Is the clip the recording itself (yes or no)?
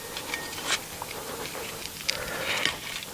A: yes